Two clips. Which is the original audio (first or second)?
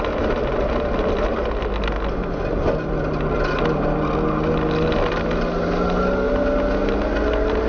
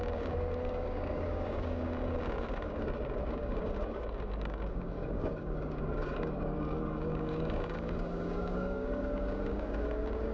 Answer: first